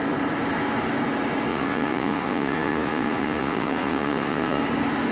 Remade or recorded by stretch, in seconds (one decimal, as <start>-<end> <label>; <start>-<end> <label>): 0.0-1.5 recorded; 1.5-4.6 remade; 4.6-5.1 recorded